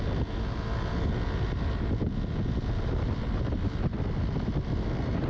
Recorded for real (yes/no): yes